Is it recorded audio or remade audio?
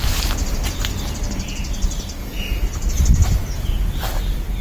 recorded